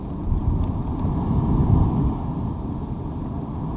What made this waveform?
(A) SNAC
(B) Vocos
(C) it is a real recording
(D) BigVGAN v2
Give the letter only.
C